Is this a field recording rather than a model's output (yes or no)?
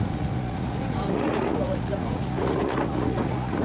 no